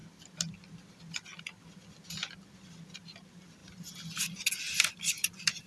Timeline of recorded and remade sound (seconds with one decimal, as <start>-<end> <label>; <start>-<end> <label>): 0.0-5.7 recorded